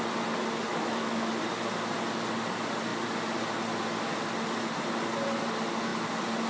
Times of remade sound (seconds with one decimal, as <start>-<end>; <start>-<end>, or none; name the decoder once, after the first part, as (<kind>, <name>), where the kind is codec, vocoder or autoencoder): 0.7-1.3 (autoencoder, DAC-VAE)